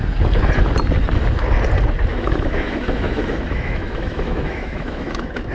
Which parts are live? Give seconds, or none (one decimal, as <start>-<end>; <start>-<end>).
0.0-2.1